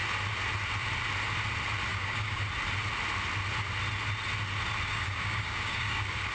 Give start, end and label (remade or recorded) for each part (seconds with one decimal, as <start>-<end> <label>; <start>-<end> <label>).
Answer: 0.0-1.9 recorded; 1.9-2.4 remade; 2.4-4.9 recorded; 4.9-6.3 remade

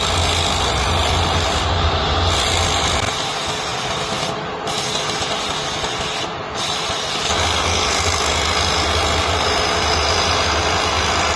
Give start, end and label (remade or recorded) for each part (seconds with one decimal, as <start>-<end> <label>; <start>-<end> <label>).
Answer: 0.0-11.4 recorded

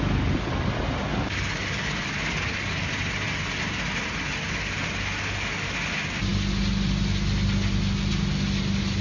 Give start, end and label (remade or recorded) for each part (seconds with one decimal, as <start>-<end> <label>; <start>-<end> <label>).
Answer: 0.0-1.1 recorded; 1.1-2.9 remade; 2.9-9.0 recorded